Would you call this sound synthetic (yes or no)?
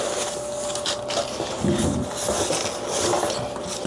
no